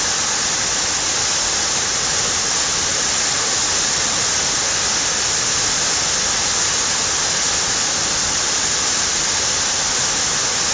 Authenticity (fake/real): real